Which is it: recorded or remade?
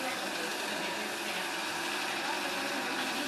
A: recorded